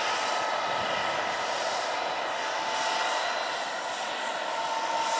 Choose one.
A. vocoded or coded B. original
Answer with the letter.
B